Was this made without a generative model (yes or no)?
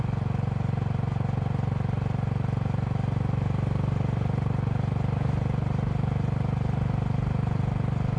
yes